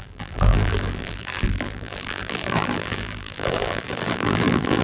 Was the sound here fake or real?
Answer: fake